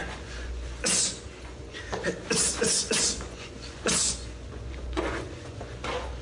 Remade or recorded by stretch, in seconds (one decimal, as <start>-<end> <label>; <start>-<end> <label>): 0.0-1.8 remade; 1.8-2.4 recorded; 2.4-6.2 remade